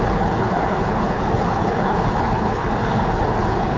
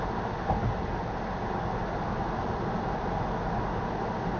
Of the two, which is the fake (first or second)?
first